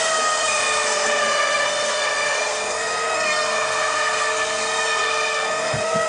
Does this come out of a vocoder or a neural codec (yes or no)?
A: yes